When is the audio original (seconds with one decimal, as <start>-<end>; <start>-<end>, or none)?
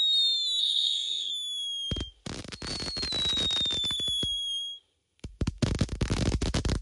0.0-0.6; 1.3-6.8